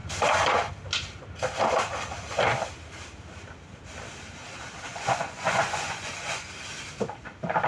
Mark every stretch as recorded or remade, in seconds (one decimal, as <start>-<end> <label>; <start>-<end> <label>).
0.0-4.9 recorded; 4.9-6.5 remade; 6.5-7.7 recorded